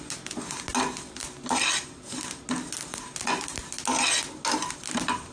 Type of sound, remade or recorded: recorded